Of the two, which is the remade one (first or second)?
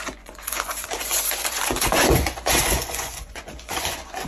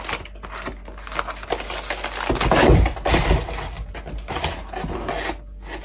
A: first